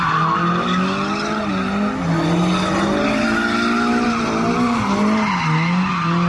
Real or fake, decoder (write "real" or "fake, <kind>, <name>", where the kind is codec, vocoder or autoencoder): real